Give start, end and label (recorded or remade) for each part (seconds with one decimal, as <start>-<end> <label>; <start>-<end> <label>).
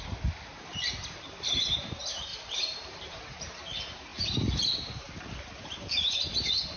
0.0-2.3 recorded; 2.3-3.2 remade; 3.2-6.8 recorded